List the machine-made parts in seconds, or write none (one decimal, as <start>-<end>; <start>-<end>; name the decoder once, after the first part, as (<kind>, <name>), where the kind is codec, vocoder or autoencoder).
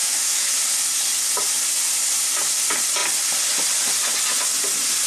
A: 0.0-0.5 (autoencoder, DAC-VAE)